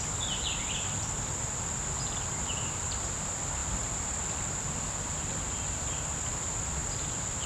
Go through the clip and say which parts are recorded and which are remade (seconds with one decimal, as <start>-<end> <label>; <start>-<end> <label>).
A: 0.0-7.5 recorded